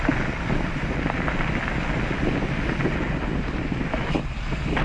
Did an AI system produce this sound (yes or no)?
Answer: no